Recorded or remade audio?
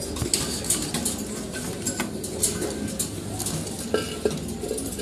recorded